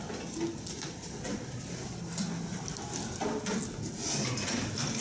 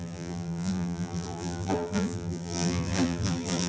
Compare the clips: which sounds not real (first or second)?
second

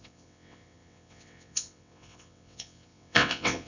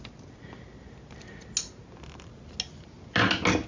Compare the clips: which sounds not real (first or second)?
first